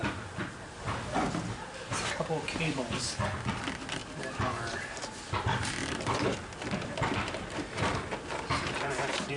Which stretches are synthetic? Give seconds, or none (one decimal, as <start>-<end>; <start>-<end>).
none